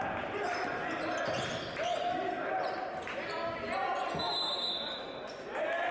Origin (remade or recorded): recorded